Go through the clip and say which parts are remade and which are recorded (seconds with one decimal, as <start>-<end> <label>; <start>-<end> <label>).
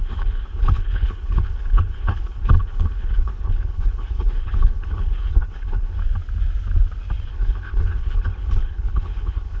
0.0-6.0 remade; 6.0-7.3 recorded; 7.3-9.6 remade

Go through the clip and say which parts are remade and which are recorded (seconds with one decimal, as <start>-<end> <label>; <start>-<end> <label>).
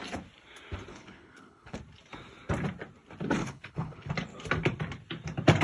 0.0-0.9 recorded; 0.9-1.8 remade; 1.8-3.4 recorded; 3.4-4.1 remade; 4.1-5.6 recorded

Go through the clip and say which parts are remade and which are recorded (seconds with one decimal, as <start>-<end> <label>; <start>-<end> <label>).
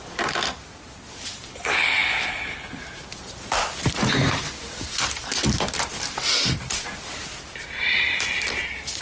0.0-1.5 recorded; 1.5-2.8 remade; 2.8-9.0 recorded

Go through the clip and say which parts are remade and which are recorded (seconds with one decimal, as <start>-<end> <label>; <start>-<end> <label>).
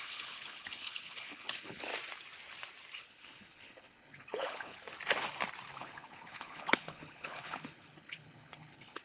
0.0-1.9 remade; 1.9-3.0 recorded; 3.0-4.8 remade; 4.8-5.8 recorded; 5.8-9.0 remade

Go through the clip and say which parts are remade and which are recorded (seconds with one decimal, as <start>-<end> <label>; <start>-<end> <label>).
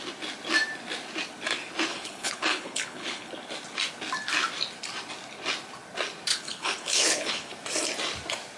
0.0-1.9 recorded; 1.9-3.3 remade; 3.3-6.3 recorded; 6.3-7.5 remade; 7.5-8.6 recorded